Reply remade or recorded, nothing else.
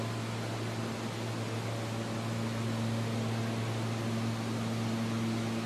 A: recorded